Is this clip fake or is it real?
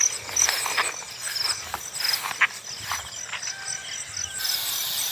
real